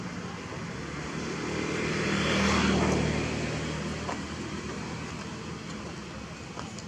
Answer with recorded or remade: recorded